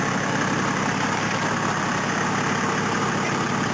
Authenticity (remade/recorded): recorded